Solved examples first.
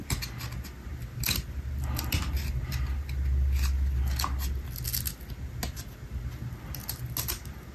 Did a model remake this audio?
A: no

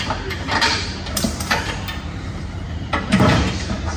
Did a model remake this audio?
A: yes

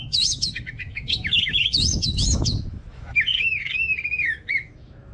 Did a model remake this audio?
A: yes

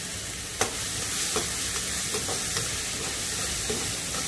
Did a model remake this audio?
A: no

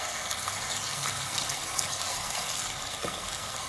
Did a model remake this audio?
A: yes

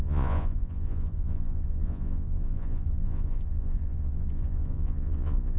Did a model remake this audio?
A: yes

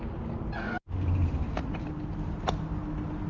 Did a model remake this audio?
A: no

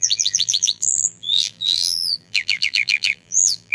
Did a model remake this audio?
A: yes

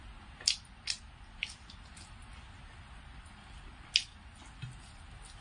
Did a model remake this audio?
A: no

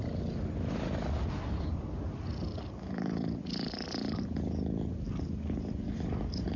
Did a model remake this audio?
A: no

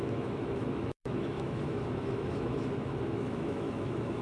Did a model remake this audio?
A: yes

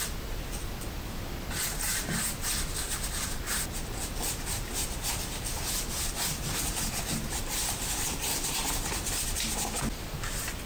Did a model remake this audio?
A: no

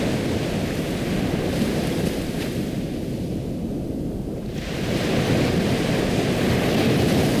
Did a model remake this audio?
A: no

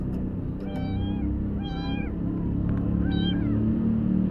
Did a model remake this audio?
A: no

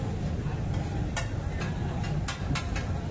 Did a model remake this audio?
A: no